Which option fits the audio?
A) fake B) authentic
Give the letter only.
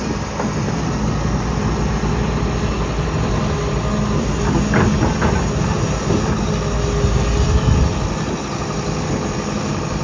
B